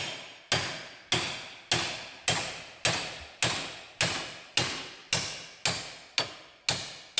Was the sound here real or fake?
real